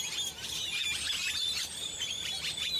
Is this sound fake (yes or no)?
no